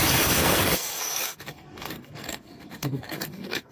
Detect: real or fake fake